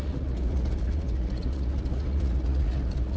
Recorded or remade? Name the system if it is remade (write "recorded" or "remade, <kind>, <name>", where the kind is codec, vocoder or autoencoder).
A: remade, vocoder, Vocos